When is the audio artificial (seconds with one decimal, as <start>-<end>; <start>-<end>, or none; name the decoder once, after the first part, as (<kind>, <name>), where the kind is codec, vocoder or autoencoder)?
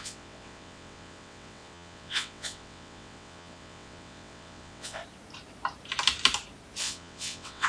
0.0-5.0 (vocoder, WaveNeXt); 6.8-7.7